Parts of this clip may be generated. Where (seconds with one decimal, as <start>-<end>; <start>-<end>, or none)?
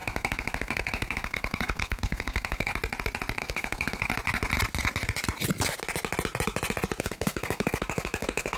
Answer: 0.0-2.7; 3.4-4.1; 7.0-8.6